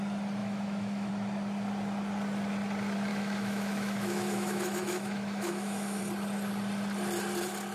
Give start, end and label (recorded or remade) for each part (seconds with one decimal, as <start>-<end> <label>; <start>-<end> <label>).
0.0-0.4 recorded; 0.4-1.1 remade; 1.1-3.1 recorded; 3.1-6.0 remade; 6.0-7.7 recorded